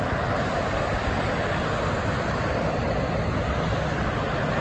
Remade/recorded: recorded